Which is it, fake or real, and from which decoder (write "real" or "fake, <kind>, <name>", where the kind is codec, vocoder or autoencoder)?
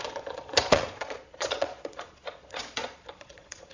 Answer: fake, vocoder, Vocos